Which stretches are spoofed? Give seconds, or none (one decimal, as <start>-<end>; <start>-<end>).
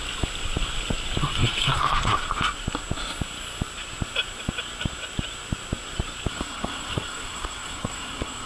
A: 1.2-2.2; 6.3-8.5